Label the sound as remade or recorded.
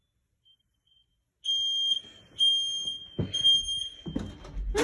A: recorded